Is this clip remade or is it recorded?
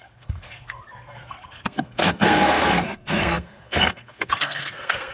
remade